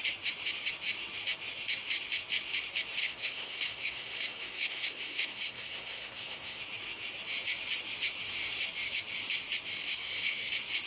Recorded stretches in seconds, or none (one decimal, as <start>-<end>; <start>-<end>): 0.0-3.0; 6.6-9.8; 10.5-10.9